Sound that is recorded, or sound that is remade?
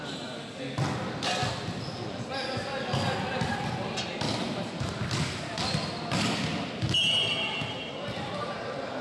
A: recorded